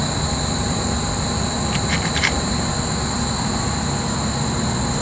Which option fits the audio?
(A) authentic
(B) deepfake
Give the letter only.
A